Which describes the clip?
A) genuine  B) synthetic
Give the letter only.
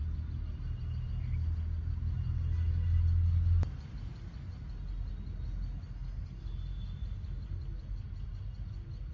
A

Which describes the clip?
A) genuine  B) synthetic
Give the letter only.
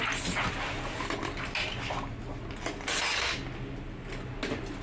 A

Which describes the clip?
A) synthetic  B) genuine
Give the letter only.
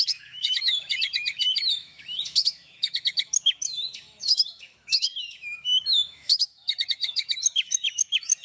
A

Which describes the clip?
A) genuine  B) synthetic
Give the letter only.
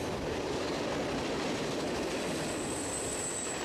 A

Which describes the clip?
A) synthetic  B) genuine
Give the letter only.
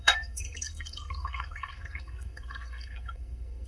A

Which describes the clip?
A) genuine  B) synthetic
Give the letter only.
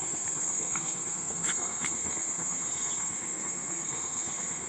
B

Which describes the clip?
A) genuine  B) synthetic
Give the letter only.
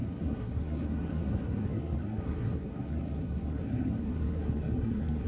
B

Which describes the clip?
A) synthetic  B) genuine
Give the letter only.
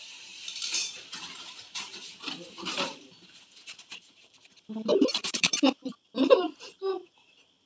A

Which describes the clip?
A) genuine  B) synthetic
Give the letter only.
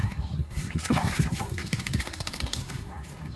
B